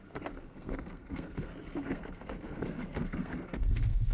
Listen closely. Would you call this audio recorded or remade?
remade